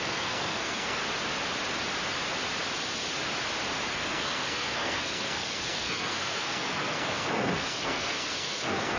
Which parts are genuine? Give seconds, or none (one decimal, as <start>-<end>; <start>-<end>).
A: 1.0-3.9